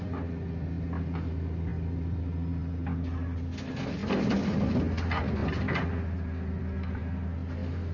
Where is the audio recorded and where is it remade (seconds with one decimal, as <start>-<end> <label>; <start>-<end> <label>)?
0.0-7.9 recorded